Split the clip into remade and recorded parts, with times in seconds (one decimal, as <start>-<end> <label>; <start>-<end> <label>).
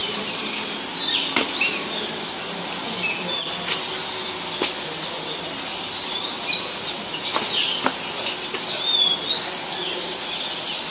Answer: 0.0-1.7 remade; 1.7-10.9 recorded